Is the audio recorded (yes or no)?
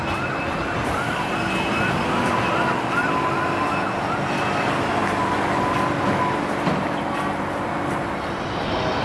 yes